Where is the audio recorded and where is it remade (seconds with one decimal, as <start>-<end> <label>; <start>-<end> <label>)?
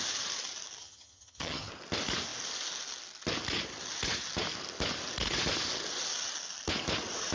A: 0.0-0.8 recorded; 0.8-1.7 remade; 1.7-7.3 recorded